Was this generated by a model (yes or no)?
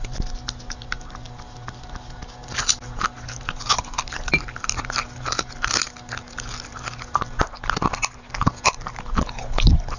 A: no